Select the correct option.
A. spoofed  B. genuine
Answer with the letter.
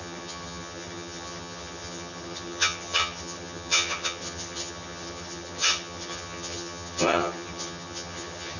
A